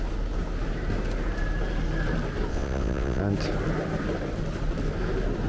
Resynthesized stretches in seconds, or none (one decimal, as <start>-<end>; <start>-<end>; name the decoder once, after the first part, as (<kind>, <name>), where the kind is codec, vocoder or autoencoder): 2.5-3.2 (vocoder, WaveNeXt)